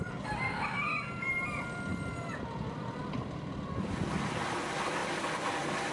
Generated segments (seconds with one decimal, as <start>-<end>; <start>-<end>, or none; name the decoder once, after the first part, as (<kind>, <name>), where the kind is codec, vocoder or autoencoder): none